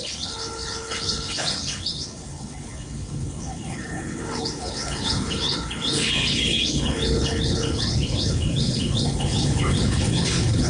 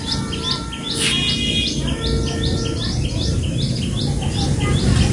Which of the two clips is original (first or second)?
second